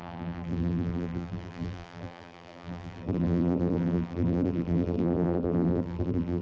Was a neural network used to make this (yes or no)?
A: yes